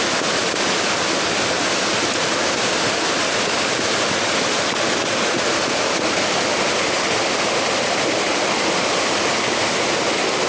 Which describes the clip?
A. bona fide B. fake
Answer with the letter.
A